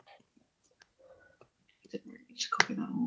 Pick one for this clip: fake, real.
real